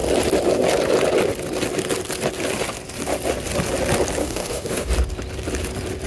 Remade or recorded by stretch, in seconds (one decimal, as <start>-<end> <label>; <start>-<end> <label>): 0.0-4.2 recorded; 4.2-4.9 remade; 4.9-6.1 recorded

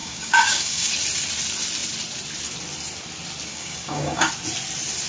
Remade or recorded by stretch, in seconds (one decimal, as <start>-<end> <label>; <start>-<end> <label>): 0.0-0.9 remade; 0.9-3.5 recorded; 3.5-4.3 remade; 4.3-5.1 recorded

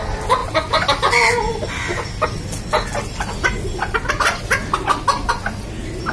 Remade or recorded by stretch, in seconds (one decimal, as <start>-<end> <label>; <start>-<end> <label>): 0.0-6.1 recorded

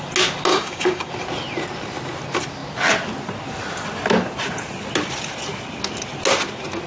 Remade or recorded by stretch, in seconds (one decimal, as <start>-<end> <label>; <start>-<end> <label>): 0.0-0.5 recorded; 0.5-1.1 remade; 1.1-6.9 recorded

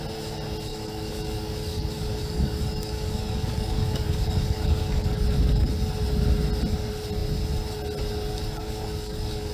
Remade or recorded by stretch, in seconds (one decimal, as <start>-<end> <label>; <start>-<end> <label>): 0.0-0.7 recorded; 0.7-5.7 remade; 5.7-8.6 recorded; 8.6-9.5 remade

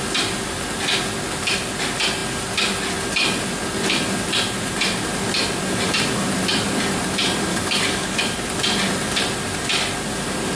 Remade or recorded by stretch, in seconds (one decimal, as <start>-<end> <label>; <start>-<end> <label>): 0.0-7.5 recorded; 7.5-8.2 remade; 8.2-10.5 recorded